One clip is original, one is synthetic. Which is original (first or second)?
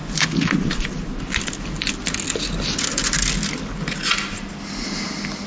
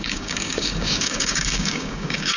first